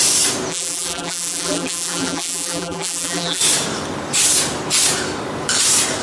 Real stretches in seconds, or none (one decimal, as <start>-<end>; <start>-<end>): 0.0-0.5; 3.4-6.0